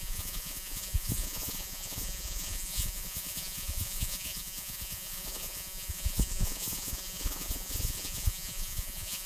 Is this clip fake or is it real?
fake